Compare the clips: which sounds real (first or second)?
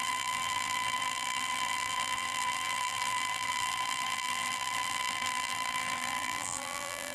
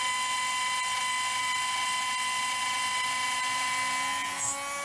second